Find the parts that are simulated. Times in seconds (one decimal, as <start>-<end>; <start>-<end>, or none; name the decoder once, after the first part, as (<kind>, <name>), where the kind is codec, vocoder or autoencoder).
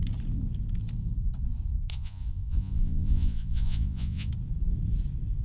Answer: 1.9-4.3 (vocoder, Vocos)